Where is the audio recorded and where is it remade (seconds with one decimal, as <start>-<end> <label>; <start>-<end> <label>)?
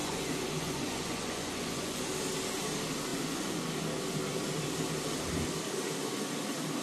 0.0-2.1 remade; 2.1-3.1 recorded; 3.1-3.7 remade; 3.7-6.8 recorded